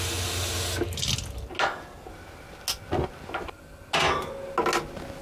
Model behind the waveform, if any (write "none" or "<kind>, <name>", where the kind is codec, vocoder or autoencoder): none